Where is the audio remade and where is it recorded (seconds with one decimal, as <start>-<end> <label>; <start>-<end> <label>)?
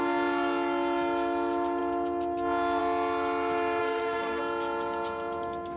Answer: 0.0-3.8 recorded; 3.8-4.4 remade; 4.4-5.8 recorded